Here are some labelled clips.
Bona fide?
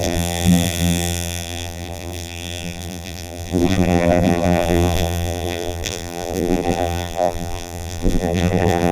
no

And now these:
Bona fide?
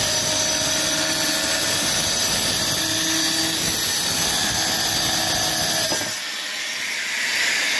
yes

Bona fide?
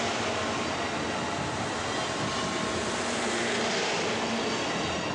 yes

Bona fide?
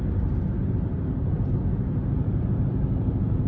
yes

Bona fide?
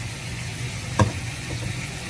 no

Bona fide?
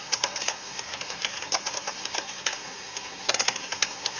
no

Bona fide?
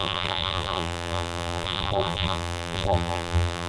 no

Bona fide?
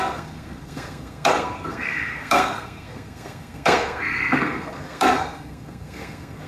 no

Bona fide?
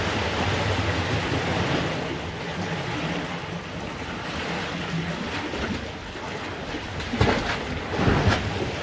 yes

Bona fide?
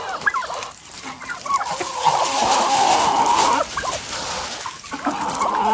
yes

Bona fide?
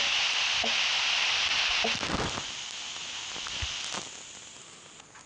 yes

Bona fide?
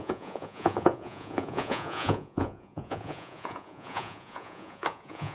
no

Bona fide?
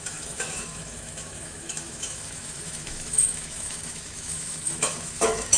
no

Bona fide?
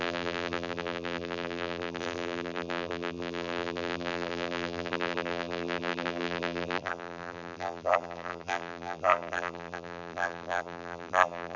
no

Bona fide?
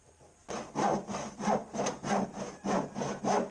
yes